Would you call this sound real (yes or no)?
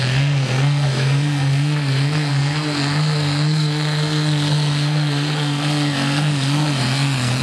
no